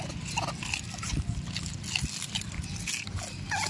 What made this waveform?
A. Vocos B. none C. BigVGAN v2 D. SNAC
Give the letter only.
B